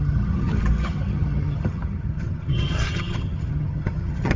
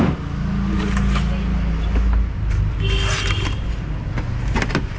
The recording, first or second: second